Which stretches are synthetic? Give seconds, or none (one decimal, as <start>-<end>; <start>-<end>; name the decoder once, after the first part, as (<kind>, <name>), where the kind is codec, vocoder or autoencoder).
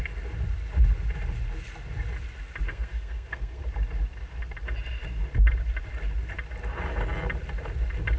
2.7-3.6 (codec, SNAC)